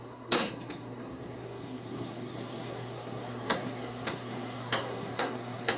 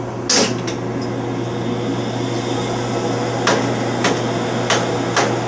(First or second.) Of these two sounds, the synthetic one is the first